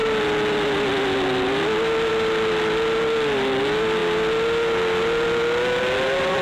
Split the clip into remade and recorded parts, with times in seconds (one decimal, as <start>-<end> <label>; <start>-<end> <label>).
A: 0.0-6.4 recorded